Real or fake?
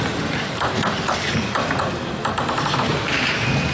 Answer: real